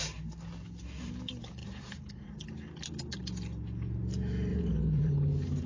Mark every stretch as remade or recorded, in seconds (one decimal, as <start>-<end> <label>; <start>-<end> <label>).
0.0-1.6 recorded; 1.6-2.5 remade; 2.5-4.5 recorded; 4.5-5.1 remade; 5.1-5.7 recorded